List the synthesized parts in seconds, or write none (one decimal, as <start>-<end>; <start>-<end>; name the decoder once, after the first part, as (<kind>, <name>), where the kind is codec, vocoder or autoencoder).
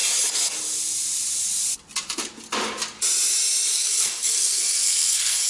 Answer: 3.7-5.5 (codec, SNAC)